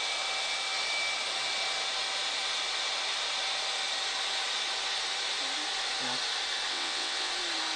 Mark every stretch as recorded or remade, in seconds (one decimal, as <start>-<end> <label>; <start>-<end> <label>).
0.0-6.7 recorded; 6.7-7.3 remade; 7.3-7.8 recorded